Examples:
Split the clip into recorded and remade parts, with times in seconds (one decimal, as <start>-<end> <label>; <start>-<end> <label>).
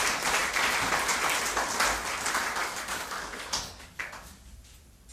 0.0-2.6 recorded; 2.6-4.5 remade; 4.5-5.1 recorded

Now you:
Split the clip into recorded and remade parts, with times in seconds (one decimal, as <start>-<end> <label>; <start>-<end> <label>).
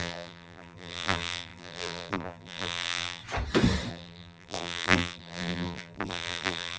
0.0-3.2 remade; 3.2-3.9 recorded; 3.9-6.8 remade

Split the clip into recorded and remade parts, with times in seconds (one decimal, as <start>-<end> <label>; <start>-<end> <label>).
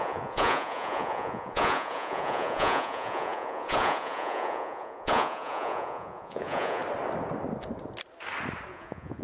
0.0-6.8 remade; 6.8-8.7 recorded; 8.7-9.2 remade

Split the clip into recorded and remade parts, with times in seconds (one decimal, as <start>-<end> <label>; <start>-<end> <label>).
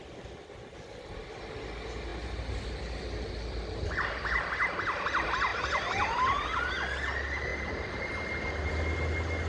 0.0-7.5 recorded; 7.5-8.1 remade; 8.1-9.5 recorded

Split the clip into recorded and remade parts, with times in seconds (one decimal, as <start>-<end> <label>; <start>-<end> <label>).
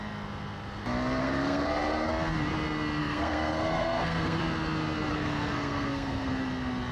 0.0-1.2 recorded; 1.2-2.1 remade; 2.1-3.0 recorded; 3.0-4.4 remade; 4.4-5.1 recorded; 5.1-6.3 remade; 6.3-6.9 recorded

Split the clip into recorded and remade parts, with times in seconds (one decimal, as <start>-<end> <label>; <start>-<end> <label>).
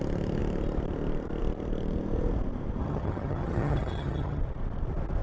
0.0-2.8 recorded; 2.8-4.4 remade; 4.4-5.2 recorded